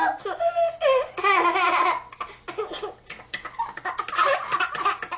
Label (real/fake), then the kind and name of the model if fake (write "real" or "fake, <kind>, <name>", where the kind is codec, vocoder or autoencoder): real